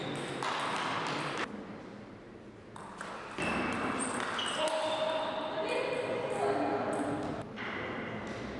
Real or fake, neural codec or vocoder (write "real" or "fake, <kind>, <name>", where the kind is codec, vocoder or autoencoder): real